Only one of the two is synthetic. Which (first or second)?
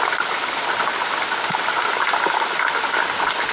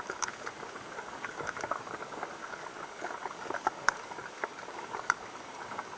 second